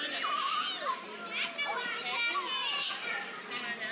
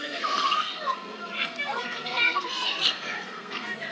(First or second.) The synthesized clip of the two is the second